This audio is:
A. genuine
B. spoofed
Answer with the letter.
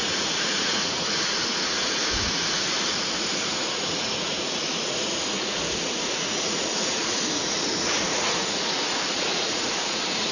B